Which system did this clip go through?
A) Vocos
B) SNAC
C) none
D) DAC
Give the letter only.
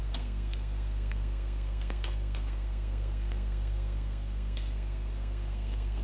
B